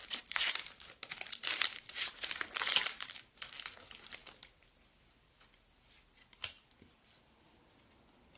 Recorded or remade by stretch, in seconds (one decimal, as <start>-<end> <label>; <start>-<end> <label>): 0.0-3.5 remade; 3.5-8.4 recorded